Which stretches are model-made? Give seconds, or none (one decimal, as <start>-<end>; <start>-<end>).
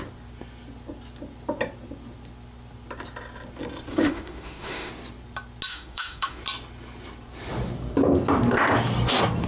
3.9-4.9; 5.7-6.4